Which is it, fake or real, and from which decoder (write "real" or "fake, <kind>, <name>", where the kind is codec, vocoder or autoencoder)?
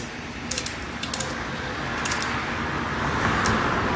real